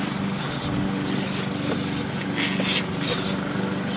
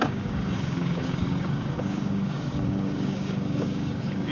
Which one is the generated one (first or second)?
second